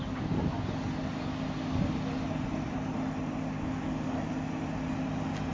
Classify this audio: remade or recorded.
recorded